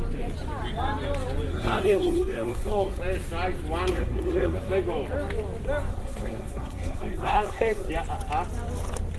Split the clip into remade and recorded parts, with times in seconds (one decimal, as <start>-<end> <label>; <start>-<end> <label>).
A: 0.0-1.5 recorded; 1.5-3.0 remade; 3.0-3.9 recorded; 3.9-4.7 remade; 4.7-5.9 recorded; 5.9-7.9 remade; 7.9-9.2 recorded